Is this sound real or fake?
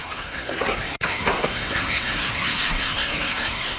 fake